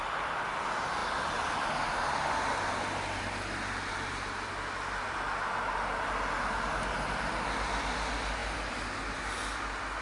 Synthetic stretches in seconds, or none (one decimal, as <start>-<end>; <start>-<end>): none